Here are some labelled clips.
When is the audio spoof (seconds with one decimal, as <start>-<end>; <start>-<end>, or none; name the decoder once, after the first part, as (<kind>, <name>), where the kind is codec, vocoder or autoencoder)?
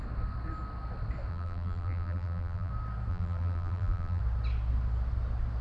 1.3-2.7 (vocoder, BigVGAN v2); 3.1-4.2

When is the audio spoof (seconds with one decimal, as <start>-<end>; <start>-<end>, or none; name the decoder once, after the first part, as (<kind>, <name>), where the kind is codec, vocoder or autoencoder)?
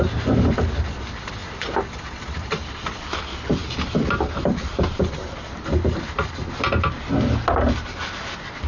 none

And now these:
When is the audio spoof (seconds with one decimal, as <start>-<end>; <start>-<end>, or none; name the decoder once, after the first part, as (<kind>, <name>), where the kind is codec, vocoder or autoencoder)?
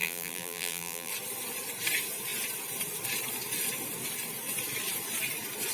0.0-1.1 (vocoder, BigVGAN v2)